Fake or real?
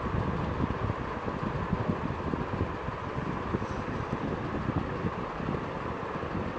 real